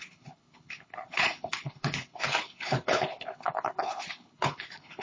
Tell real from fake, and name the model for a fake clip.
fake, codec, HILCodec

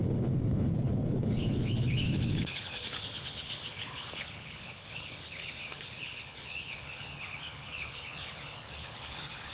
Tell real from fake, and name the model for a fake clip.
fake, codec, HILCodec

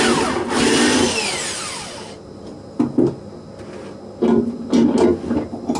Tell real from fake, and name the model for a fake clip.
real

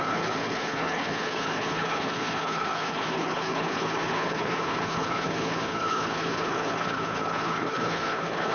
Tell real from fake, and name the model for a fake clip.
fake, codec, HILCodec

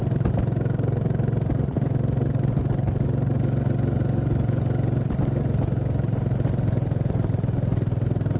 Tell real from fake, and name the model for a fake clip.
real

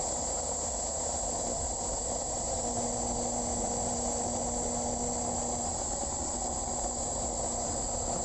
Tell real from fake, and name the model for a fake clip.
real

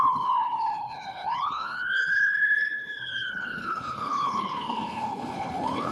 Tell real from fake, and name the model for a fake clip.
fake, codec, HILCodec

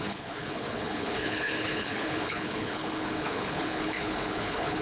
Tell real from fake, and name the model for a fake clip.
fake, codec, HILCodec